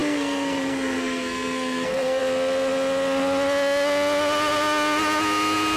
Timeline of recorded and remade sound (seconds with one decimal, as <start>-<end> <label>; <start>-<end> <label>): 0.0-2.2 remade; 2.2-5.8 recorded